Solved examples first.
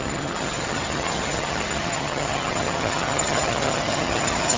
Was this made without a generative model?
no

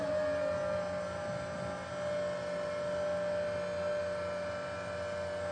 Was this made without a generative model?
yes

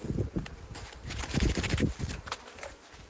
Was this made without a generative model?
yes